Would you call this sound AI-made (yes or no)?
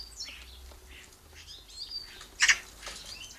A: no